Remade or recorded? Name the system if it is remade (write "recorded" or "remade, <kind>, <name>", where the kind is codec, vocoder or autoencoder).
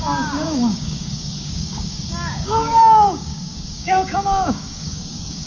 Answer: remade, codec, DAC